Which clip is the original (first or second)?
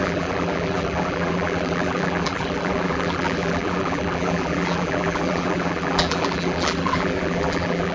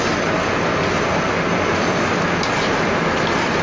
second